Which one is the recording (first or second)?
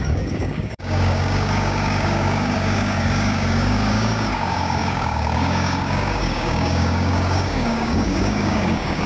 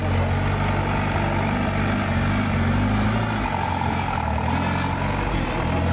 second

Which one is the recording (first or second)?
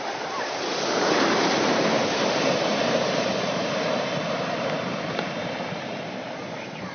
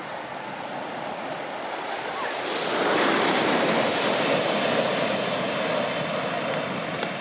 second